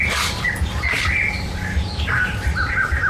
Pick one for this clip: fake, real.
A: real